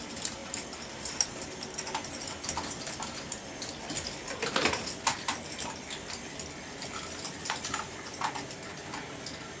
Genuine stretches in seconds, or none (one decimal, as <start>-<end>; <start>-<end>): 0.0-9.6